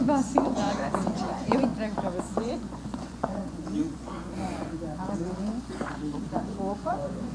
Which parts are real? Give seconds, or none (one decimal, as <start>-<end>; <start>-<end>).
1.7-2.2; 5.5-6.4